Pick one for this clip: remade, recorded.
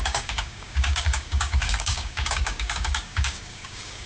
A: remade